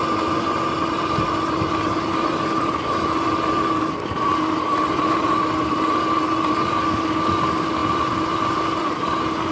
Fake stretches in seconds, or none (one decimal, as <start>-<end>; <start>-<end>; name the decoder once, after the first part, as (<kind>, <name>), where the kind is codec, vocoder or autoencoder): none